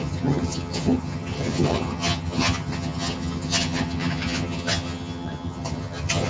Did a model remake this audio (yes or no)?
yes